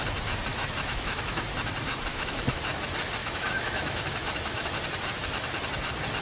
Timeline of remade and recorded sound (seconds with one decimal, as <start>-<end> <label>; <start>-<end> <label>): 0.0-0.5 recorded; 0.5-1.4 remade; 1.4-2.1 recorded; 2.1-2.6 remade; 2.6-3.2 recorded; 3.2-4.7 remade; 4.7-6.2 recorded